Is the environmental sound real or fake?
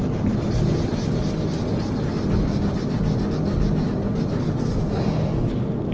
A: real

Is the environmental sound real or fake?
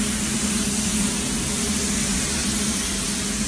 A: real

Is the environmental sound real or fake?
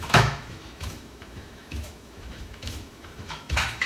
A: fake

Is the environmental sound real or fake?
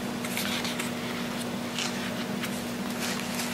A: real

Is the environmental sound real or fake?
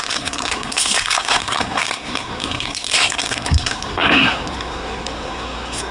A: fake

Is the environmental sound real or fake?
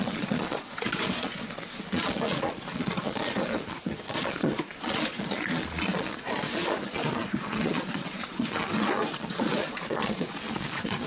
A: fake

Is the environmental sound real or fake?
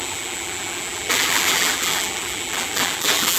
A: fake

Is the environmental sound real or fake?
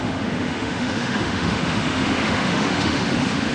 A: fake